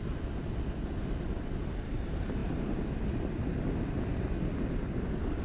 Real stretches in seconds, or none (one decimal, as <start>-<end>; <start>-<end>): 0.0-5.4